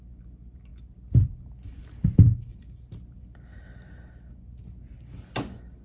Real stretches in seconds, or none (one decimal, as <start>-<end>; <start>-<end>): 0.0-5.8